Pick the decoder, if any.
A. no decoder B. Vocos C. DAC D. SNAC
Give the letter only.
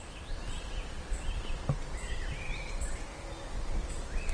A